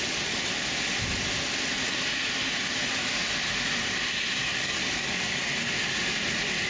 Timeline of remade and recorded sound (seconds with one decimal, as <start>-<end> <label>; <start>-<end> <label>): 0.0-4.5 recorded; 4.5-5.4 remade; 5.4-6.7 recorded

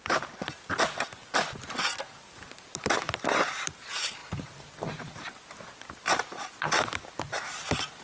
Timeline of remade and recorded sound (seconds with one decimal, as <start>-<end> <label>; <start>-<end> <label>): 0.0-8.0 recorded

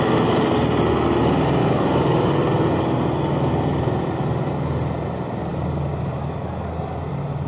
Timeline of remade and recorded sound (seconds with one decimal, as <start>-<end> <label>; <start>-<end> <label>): 0.0-1.6 recorded; 1.6-2.4 remade; 2.4-7.5 recorded

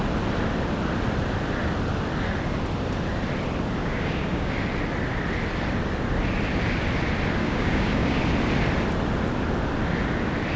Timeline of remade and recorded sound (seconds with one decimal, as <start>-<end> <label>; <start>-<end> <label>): 0.0-3.8 recorded; 3.8-4.5 remade; 4.5-7.4 recorded; 7.4-8.2 remade; 8.2-10.6 recorded

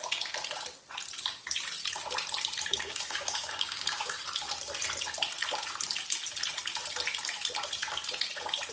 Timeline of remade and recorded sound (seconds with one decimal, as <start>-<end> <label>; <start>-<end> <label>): 0.0-2.7 recorded; 2.7-4.2 remade; 4.2-8.7 recorded